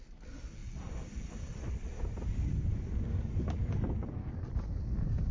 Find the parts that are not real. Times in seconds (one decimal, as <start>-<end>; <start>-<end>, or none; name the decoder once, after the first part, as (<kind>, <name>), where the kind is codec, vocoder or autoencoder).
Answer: 3.6-4.2 (codec, DAC)

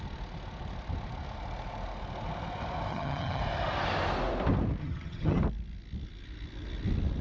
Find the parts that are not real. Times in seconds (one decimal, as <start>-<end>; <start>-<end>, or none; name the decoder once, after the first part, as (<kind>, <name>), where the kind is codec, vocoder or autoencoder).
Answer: 2.9-3.4 (vocoder, HiFi-GAN); 4.8-5.4

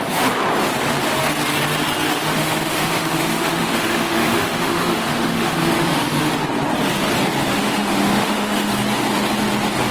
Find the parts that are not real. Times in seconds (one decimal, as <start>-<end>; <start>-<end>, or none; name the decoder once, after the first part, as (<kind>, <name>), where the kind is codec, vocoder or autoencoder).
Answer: 2.1-6.2 (autoencoder, DAC-VAE); 7.6-8.7

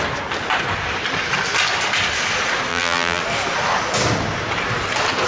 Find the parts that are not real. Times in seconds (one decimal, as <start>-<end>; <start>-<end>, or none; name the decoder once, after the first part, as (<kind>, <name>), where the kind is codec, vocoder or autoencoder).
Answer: 2.7-3.2 (vocoder, BigVGAN v2)

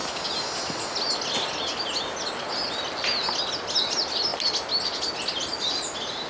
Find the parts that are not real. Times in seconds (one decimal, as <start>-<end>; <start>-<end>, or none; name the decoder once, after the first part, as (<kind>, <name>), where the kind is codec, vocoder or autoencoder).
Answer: none

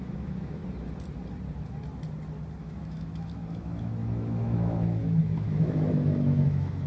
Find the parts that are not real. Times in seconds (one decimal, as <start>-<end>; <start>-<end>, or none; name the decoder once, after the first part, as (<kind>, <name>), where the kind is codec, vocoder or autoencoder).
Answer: 0.0-0.6 (autoencoder, DAC-VAE); 2.6-6.9

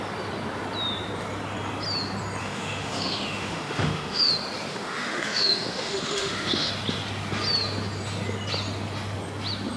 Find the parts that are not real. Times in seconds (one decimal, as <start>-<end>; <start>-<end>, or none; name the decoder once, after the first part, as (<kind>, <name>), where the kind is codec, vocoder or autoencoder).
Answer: 2.4-4.3 (autoencoder, DAC-VAE); 4.7-6.7